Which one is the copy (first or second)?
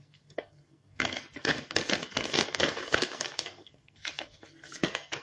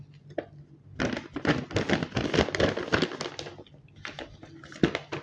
first